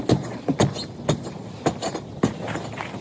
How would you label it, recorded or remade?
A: recorded